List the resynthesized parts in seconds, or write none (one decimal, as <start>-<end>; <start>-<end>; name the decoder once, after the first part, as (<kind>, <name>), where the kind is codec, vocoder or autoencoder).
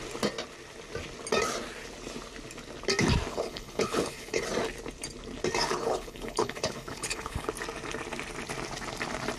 3.3-4.4 (codec, HILCodec); 5.8-7.5